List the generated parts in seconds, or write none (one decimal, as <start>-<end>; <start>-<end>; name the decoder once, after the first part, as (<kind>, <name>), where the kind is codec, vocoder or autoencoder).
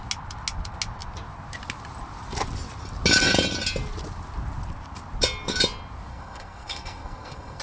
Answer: 6.1-7.6 (codec, SNAC)